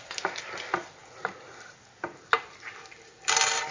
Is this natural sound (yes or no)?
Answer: yes